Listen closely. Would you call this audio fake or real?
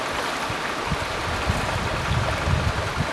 real